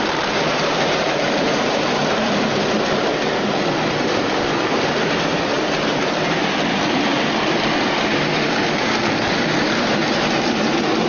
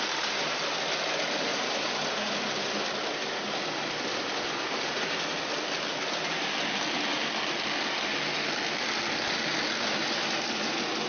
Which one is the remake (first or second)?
first